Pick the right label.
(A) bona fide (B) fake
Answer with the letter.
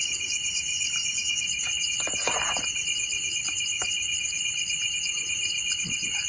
B